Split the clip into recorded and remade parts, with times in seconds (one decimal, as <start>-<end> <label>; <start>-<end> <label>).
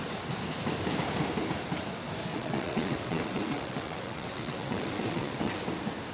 0.0-2.3 recorded; 2.3-5.6 remade; 5.6-6.1 recorded